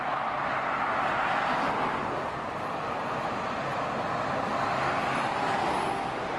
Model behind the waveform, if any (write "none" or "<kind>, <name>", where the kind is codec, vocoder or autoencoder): none